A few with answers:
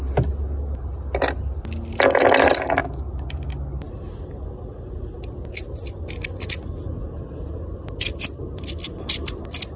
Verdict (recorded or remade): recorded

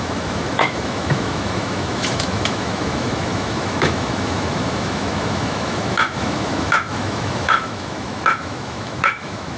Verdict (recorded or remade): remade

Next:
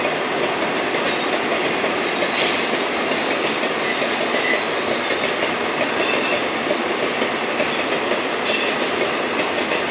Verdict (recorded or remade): recorded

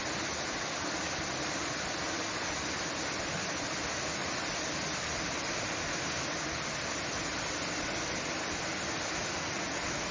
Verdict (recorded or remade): recorded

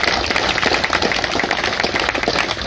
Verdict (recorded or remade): recorded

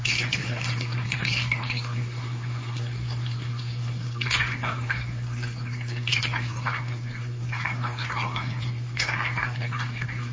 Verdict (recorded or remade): remade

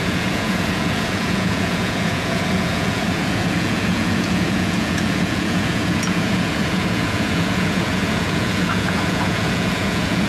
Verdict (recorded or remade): remade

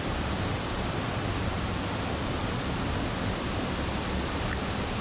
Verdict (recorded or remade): remade